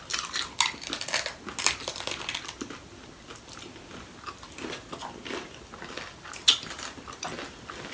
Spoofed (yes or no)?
no